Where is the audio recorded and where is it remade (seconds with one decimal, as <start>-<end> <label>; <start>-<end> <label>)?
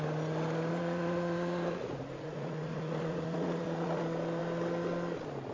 0.0-0.7 recorded; 0.7-4.0 remade; 4.0-5.5 recorded